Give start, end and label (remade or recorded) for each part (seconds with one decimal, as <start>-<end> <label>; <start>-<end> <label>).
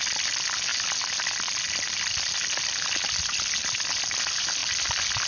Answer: 0.0-5.3 recorded